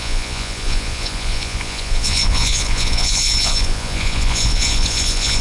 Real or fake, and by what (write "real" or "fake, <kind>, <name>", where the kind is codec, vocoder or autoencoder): fake, vocoder, Vocos